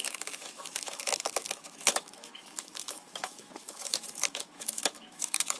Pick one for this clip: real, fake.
fake